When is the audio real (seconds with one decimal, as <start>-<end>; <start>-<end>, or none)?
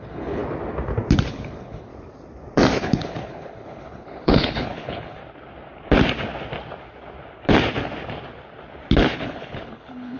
0.4-1.3; 1.9-2.8; 5.2-9.1